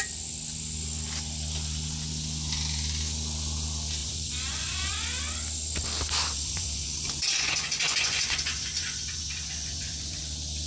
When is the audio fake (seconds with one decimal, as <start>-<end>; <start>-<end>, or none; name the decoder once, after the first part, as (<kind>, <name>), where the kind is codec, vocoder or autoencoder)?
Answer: 4.0-4.9 (vocoder, Vocos); 6.3-10.2